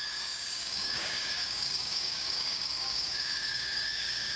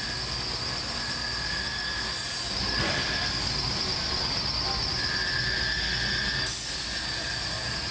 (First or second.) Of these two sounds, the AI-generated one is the first